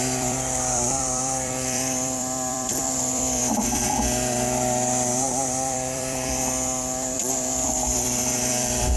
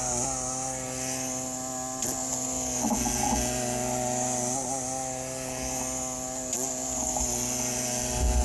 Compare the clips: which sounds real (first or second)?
second